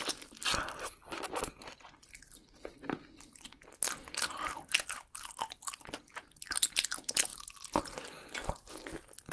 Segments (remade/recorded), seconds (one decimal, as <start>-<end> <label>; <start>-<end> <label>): 0.0-9.3 recorded